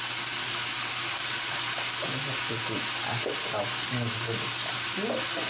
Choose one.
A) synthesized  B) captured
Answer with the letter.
B